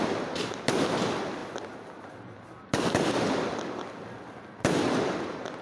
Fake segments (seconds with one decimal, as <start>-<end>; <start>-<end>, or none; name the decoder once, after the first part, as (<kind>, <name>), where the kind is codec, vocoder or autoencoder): none